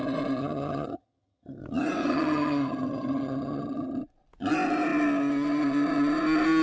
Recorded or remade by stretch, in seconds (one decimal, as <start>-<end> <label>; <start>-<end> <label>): 0.0-0.4 recorded; 0.4-1.6 remade; 1.6-2.0 recorded; 2.0-4.0 remade; 4.0-6.6 recorded